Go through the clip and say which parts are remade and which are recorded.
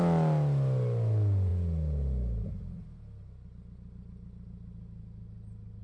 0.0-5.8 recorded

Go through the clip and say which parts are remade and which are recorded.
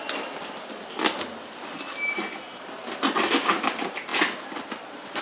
0.0-5.2 recorded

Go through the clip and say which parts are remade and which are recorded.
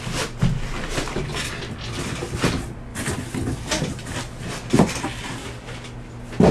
0.0-6.5 recorded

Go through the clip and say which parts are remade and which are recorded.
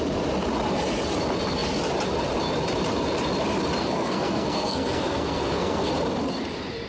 0.0-3.8 recorded; 3.8-5.9 remade; 5.9-6.9 recorded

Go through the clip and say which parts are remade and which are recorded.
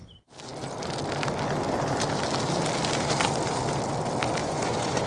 0.0-4.4 recorded; 4.4-5.1 remade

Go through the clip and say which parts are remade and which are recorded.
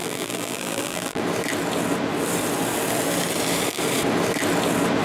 0.0-1.2 remade; 1.2-5.0 recorded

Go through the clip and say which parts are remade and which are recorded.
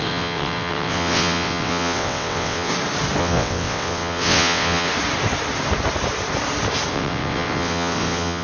0.0-2.7 remade; 2.7-3.2 recorded; 3.2-4.9 remade; 4.9-6.9 recorded; 6.9-8.4 remade